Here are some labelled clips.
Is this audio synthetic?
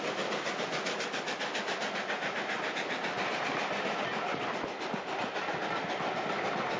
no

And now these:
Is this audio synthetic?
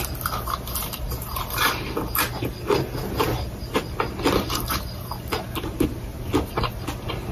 no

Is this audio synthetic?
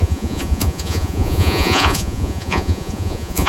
yes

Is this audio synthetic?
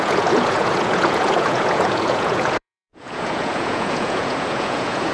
yes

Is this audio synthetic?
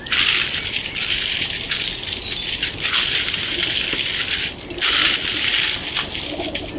no